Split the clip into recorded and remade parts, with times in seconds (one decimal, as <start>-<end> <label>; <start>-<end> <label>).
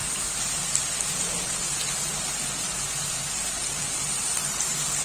0.0-5.0 recorded